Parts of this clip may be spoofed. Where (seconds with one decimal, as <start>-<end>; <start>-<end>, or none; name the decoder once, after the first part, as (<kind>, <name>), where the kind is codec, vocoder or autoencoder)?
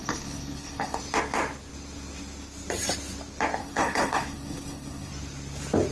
0.0-1.0 (codec, HILCodec); 3.6-5.1